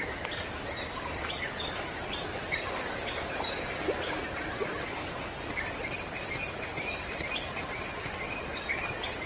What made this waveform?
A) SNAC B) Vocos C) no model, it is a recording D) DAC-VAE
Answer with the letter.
C